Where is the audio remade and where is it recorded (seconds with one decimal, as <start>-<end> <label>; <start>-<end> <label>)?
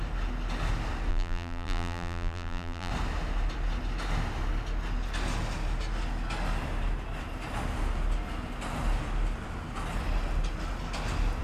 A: 0.0-1.1 recorded; 1.1-2.9 remade; 2.9-11.4 recorded